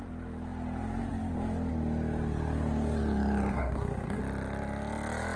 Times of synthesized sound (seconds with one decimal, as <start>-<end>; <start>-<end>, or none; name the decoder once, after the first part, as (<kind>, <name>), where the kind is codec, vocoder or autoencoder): 3.5-4.2 (codec, SNAC)